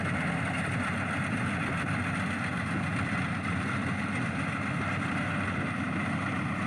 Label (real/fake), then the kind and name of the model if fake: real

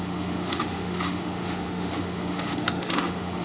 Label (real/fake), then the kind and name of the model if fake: fake, autoencoder, DAC-VAE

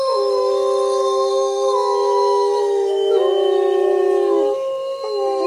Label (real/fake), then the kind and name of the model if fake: fake, autoencoder, DAC-VAE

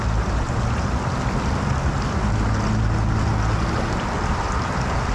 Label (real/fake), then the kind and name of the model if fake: real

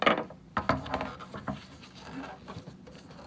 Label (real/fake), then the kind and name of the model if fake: real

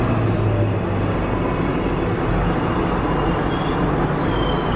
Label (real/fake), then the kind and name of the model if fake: real